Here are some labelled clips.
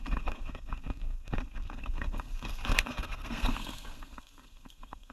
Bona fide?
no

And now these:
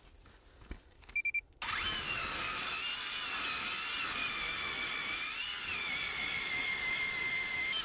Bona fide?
yes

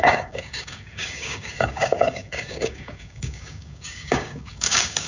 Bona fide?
no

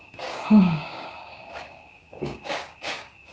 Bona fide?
no